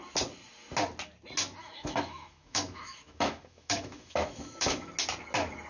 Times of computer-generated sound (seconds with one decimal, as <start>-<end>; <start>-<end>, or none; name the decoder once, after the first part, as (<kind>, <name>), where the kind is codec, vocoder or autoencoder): 1.6-4.9 (autoencoder, DAC-VAE)